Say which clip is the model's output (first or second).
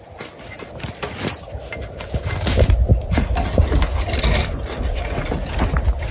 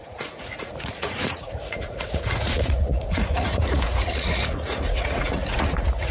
second